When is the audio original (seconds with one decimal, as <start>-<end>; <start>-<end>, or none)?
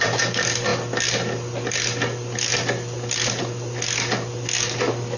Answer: 0.0-5.2